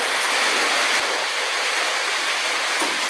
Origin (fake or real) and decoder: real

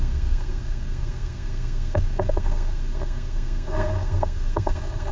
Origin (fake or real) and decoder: fake, codec, SNAC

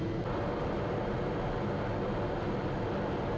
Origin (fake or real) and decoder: real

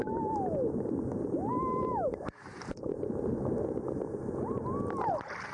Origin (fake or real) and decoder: real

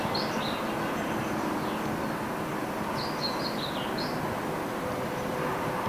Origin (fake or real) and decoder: real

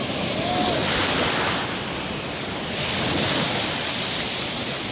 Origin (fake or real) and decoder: real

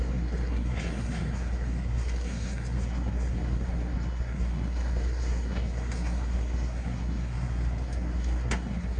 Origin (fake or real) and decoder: fake, codec, SNAC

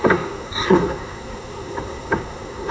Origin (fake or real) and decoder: fake, codec, SNAC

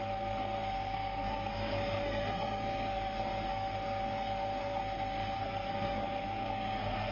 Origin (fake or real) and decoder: fake, codec, SNAC